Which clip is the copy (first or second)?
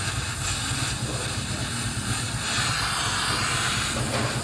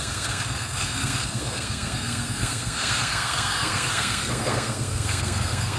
second